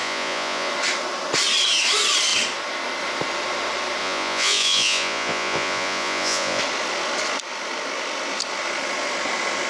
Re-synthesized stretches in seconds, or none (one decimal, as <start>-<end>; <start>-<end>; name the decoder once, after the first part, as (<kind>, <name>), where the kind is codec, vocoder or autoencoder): 0.0-0.7 (vocoder, Vocos); 4.0-6.6